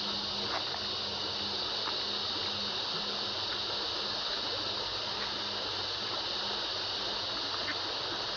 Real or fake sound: real